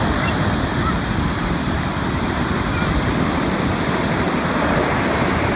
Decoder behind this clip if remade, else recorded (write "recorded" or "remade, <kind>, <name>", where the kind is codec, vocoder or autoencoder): recorded